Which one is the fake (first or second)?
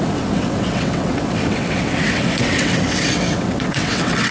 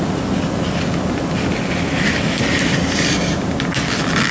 first